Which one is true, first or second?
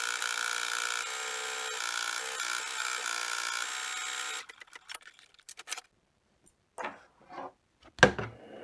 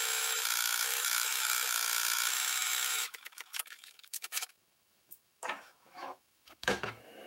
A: first